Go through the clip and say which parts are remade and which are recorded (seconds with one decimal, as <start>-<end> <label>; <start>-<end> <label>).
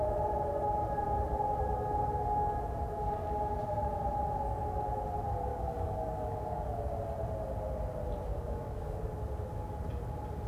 0.0-5.5 recorded; 5.5-6.7 remade; 6.7-8.3 recorded; 8.3-9.0 remade; 9.0-10.5 recorded